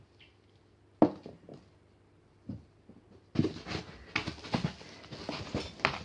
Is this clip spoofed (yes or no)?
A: no